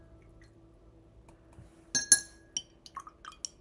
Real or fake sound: real